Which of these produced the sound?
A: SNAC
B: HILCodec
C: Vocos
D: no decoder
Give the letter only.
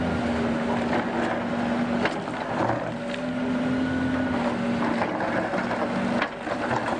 D